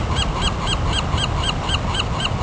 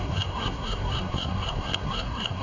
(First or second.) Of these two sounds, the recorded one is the first